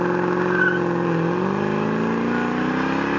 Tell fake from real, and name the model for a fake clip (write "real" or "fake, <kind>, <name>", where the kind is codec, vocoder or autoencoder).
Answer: real